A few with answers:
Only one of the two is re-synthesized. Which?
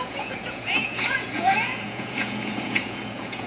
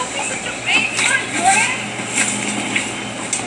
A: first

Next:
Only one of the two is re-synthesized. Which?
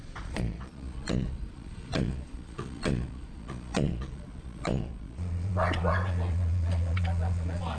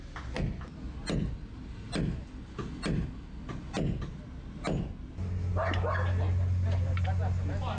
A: first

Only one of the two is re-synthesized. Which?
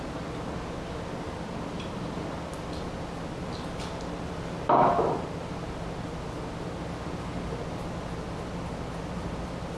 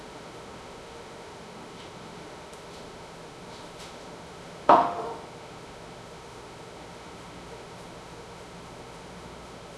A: second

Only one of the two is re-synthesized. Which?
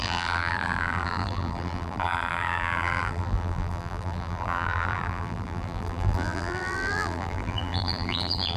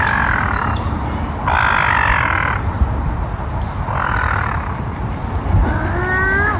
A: first